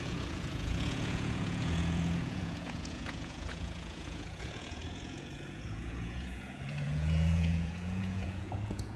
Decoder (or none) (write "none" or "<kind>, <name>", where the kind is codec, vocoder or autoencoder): vocoder, Vocos